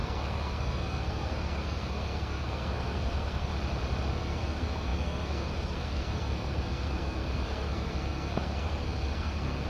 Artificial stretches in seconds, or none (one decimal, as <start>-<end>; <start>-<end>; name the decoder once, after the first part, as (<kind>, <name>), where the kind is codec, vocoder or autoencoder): 0.0-3.5 (codec, SNAC); 4.1-9.7